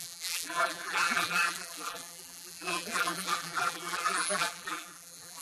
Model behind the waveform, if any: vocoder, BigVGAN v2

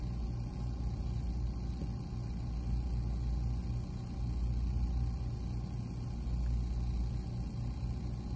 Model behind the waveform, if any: none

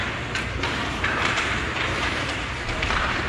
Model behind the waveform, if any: vocoder, BigVGAN v2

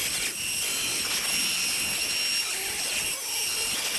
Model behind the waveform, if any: none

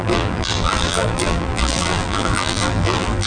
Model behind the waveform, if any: vocoder, BigVGAN v2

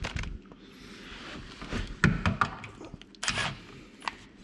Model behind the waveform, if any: none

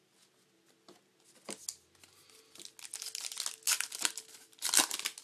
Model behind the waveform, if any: none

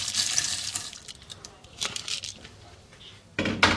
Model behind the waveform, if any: vocoder, BigVGAN v2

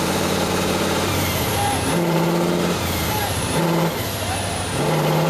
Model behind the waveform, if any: vocoder, BigVGAN v2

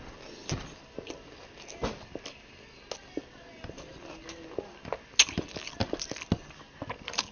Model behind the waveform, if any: none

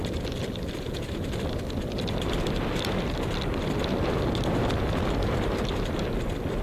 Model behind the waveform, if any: none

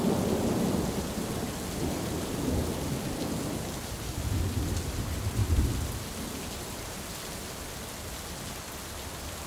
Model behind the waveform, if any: none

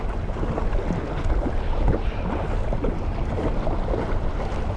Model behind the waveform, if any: none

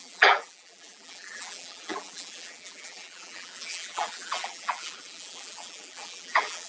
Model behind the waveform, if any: vocoder, BigVGAN v2